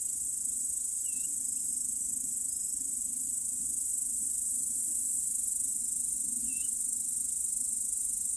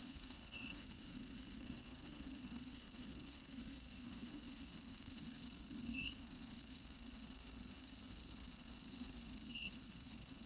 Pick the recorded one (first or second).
first